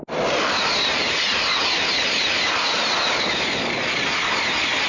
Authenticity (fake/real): real